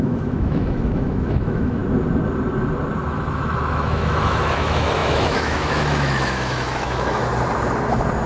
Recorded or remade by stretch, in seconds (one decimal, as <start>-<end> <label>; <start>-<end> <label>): 0.0-1.8 remade; 1.8-3.1 recorded; 3.1-7.3 remade; 7.3-8.3 recorded